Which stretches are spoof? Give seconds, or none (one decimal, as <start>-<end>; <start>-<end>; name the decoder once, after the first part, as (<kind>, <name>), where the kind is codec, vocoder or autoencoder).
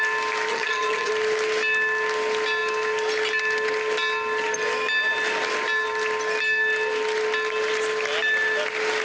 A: 0.5-1.1 (vocoder, HiFi-GAN)